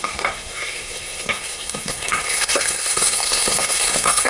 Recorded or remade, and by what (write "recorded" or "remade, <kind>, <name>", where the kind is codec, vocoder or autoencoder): remade, codec, SNAC